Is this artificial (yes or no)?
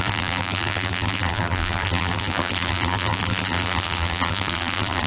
yes